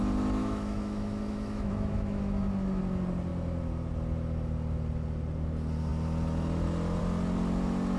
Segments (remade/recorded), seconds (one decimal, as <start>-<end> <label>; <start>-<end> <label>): 0.0-0.4 recorded; 0.4-2.8 remade; 2.8-8.0 recorded